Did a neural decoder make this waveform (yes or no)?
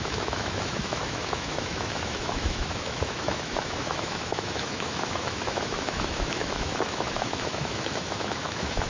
yes